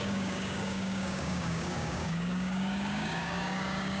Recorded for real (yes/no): no